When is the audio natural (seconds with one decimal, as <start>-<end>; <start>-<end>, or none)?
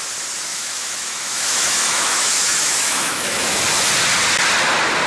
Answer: 0.0-0.5; 3.6-5.1